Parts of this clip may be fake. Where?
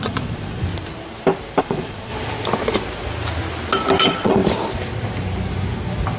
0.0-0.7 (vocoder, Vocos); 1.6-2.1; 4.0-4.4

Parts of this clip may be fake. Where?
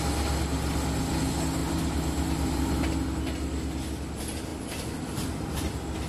1.6-2.6 (vocoder, BigVGAN v2)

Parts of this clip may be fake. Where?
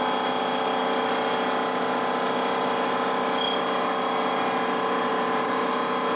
5.1-5.7 (vocoder, BigVGAN v2)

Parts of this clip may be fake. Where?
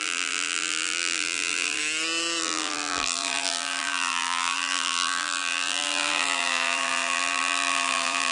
0.0-1.8 (vocoder, BigVGAN v2); 2.4-8.3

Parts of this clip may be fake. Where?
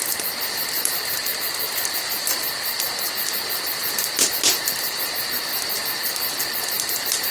none